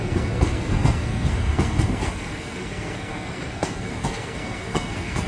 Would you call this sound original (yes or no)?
no